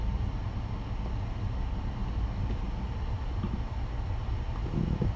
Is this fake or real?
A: real